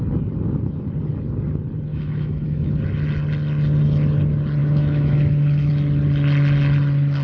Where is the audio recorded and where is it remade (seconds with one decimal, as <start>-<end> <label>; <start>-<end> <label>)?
0.0-1.9 recorded; 1.9-2.7 remade; 2.7-4.6 recorded; 4.6-5.7 remade; 5.7-7.2 recorded